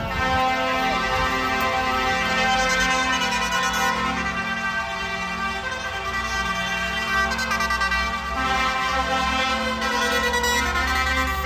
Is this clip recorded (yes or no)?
yes